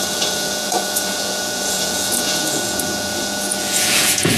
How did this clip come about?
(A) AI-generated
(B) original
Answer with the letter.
A